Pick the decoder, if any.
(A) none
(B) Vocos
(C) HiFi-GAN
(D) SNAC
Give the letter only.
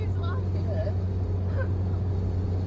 A